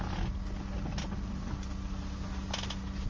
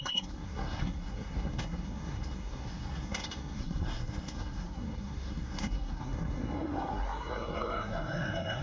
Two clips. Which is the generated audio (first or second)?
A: second